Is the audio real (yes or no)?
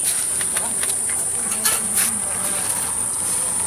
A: no